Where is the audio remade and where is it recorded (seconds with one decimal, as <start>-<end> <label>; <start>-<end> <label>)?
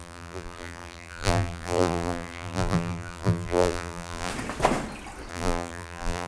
0.0-4.3 remade; 4.3-5.3 recorded; 5.3-6.3 remade